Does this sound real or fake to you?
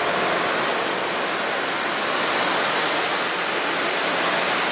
real